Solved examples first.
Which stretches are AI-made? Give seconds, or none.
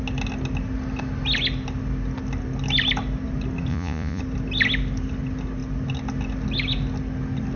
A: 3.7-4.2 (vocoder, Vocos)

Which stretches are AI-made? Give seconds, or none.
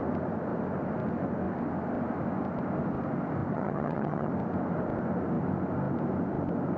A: 3.5-4.3 (vocoder, HiFi-GAN)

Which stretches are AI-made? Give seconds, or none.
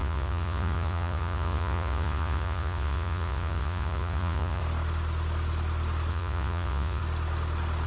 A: 0.0-4.6 (vocoder, Vocos); 6.1-7.0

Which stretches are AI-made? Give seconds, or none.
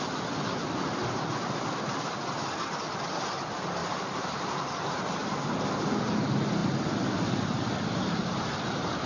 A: 3.8-4.8 (vocoder, BigVGAN v2)